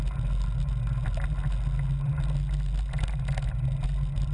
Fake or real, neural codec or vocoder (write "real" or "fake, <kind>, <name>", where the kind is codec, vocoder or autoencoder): real